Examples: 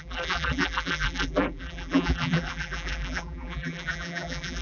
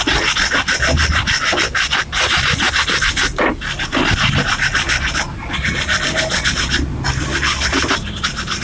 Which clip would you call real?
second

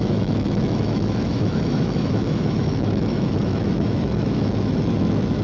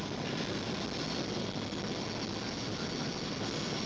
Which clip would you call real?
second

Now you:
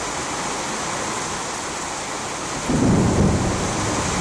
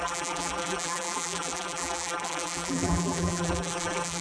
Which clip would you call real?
first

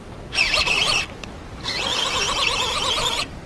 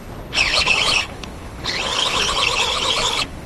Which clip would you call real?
first